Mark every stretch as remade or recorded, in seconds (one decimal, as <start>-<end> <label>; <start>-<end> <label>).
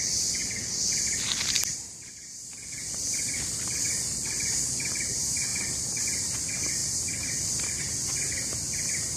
0.0-0.4 remade; 0.4-1.6 recorded; 1.6-6.8 remade; 6.8-7.8 recorded; 7.8-9.2 remade